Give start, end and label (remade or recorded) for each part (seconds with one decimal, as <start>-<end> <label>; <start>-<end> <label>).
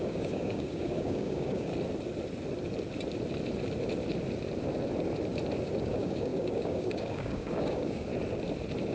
0.0-1.7 remade; 1.7-5.8 recorded; 5.8-8.1 remade; 8.1-8.9 recorded